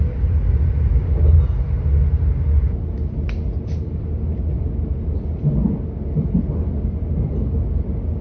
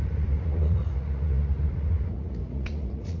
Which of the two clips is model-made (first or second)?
second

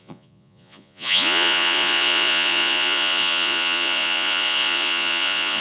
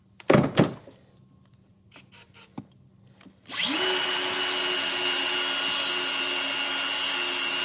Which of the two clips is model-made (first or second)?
first